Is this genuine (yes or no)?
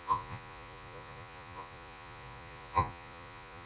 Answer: no